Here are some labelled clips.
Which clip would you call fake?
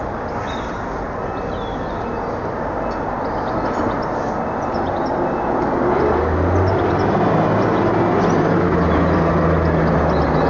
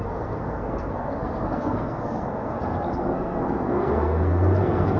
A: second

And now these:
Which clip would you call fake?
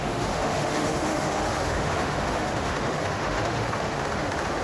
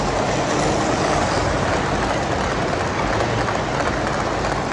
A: first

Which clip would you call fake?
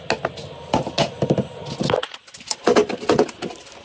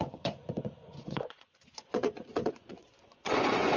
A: second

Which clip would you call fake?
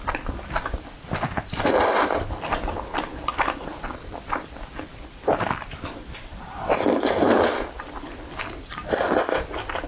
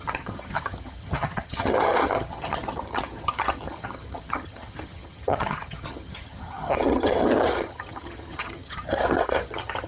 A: second